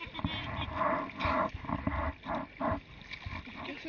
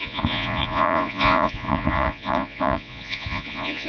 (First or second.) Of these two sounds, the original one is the first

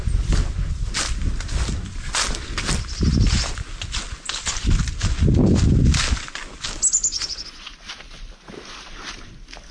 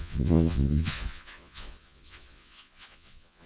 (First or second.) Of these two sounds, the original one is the first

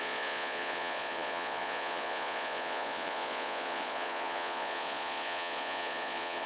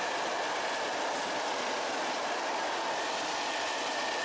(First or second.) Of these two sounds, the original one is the second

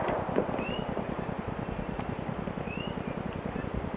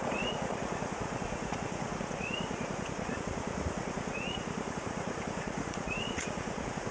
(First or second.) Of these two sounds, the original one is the first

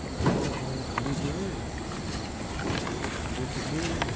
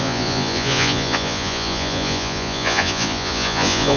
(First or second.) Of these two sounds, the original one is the first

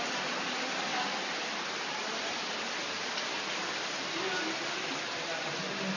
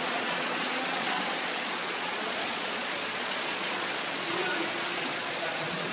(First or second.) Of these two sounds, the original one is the first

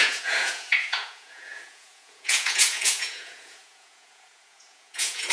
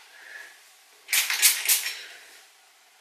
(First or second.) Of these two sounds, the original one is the second